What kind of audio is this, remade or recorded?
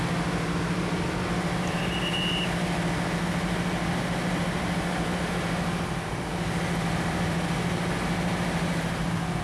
recorded